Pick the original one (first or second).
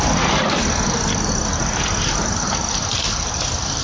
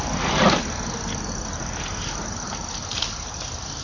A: second